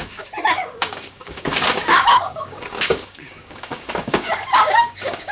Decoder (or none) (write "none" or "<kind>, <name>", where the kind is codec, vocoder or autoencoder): codec, DAC